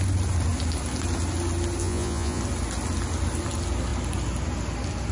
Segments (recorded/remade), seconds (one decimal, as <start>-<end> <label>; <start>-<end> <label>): 0.0-1.8 recorded; 1.8-2.4 remade; 2.4-5.1 recorded